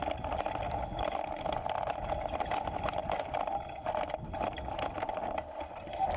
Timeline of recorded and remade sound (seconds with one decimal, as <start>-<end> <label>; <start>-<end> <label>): 0.0-6.2 recorded